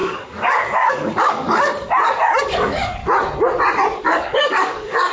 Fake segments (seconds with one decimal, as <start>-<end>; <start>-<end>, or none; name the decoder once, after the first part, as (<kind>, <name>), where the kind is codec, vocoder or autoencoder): 0.0-1.7 (codec, DAC); 2.4-3.0; 4.0-5.1